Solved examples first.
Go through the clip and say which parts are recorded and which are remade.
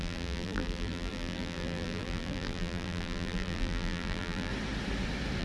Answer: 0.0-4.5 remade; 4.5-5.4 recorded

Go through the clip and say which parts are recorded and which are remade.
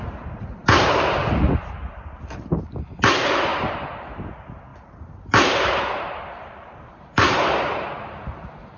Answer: 0.0-3.5 recorded; 3.5-4.0 remade; 4.0-4.7 recorded; 4.7-7.4 remade; 7.4-8.8 recorded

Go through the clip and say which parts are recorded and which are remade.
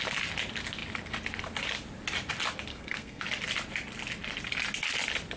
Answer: 0.0-2.7 recorded; 2.7-3.2 remade; 3.2-5.4 recorded